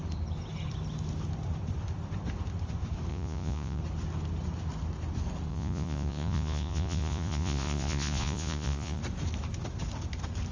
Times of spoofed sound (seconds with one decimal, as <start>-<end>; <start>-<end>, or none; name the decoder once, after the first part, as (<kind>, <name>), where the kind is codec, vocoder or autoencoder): 3.1-3.8 (vocoder, Vocos); 5.5-9.0